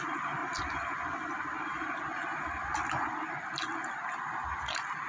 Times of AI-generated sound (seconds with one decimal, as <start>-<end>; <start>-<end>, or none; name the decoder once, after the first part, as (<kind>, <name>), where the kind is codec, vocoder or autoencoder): 0.4-2.0 (vocoder, BigVGAN v2)